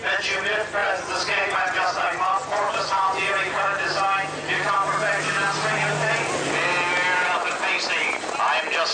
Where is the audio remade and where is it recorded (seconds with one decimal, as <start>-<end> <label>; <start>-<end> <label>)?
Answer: 0.0-0.8 recorded; 0.8-3.3 remade; 3.3-7.1 recorded; 7.1-8.2 remade; 8.2-8.9 recorded